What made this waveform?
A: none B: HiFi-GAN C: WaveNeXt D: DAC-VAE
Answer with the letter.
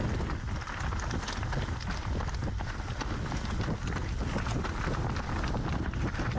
A